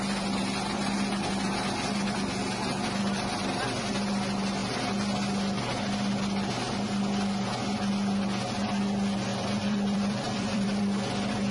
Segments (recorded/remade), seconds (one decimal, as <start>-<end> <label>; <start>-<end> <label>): 0.0-9.3 recorded; 9.3-10.8 remade; 10.8-11.5 recorded